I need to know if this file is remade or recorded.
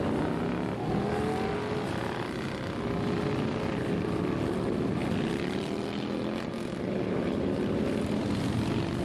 recorded